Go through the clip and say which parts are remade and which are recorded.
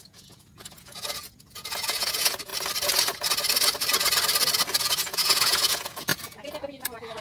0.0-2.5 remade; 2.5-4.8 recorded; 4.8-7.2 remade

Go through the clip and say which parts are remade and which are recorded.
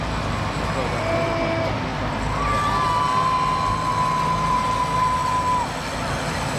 0.0-6.6 recorded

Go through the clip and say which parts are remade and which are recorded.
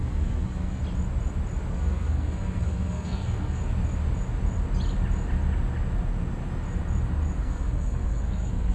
0.0-0.8 remade; 0.8-1.7 recorded; 1.7-3.6 remade; 3.6-7.4 recorded; 7.4-8.7 remade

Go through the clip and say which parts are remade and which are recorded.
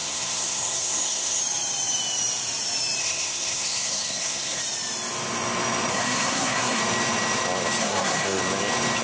0.0-1.4 remade; 1.4-3.0 recorded; 3.0-4.6 remade; 4.6-5.9 recorded; 5.9-6.8 remade; 6.8-7.8 recorded; 7.8-8.4 remade; 8.4-9.0 recorded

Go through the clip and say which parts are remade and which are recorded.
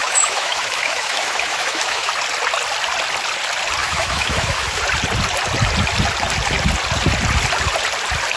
0.0-2.1 remade; 2.1-3.8 recorded; 3.8-4.8 remade; 4.8-8.4 recorded